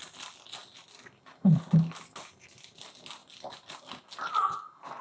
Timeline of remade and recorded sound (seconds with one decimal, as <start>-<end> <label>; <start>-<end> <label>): 0.0-5.0 recorded